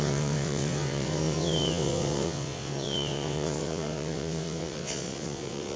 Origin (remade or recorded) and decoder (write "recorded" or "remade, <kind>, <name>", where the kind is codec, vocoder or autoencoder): remade, vocoder, WaveNeXt